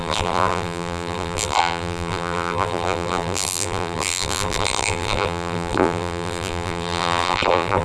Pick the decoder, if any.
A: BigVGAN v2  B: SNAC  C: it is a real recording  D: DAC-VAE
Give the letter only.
A